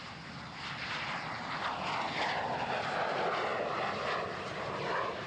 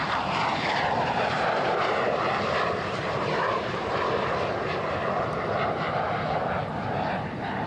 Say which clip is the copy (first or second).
second